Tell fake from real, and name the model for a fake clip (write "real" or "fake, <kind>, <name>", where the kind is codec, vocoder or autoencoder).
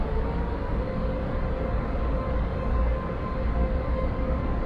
fake, codec, DAC